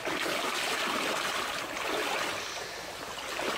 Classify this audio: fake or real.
real